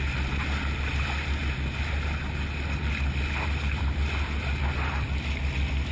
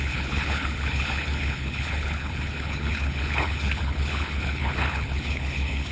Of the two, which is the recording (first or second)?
first